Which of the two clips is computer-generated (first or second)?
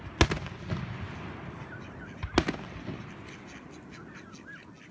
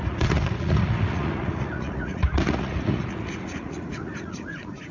second